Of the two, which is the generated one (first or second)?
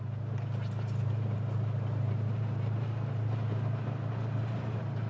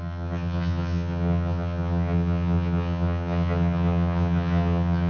second